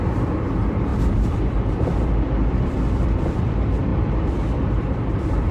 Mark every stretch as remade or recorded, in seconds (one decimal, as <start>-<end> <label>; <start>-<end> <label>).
0.0-5.5 remade